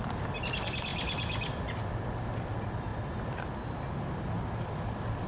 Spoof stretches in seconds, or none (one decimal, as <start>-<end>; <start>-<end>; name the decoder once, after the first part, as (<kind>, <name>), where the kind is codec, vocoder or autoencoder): 0.0-2.9 (vocoder, BigVGAN v2); 4.6-5.3